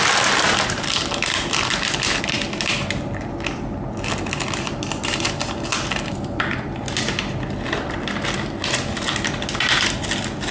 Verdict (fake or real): real